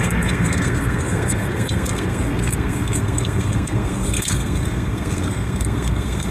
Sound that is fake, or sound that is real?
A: fake